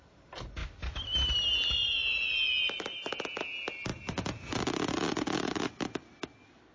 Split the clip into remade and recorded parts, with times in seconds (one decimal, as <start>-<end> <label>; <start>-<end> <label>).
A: 0.0-6.7 recorded